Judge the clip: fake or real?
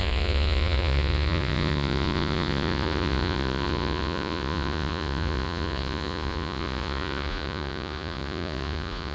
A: fake